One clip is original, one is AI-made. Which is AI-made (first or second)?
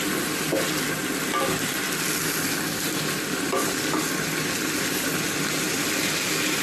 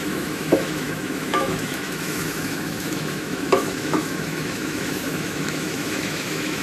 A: second